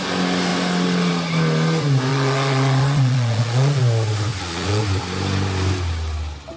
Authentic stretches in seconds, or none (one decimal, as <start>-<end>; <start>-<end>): 0.0-2.1; 3.8-4.3; 4.8-6.6